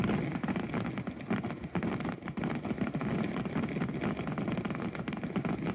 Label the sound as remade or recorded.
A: recorded